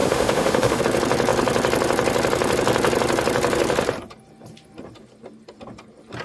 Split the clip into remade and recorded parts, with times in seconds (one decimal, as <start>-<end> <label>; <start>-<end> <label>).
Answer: 0.0-0.8 remade; 0.8-6.2 recorded